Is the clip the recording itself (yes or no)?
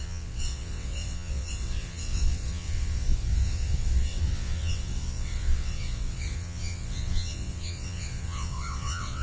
no